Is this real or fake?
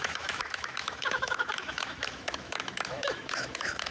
fake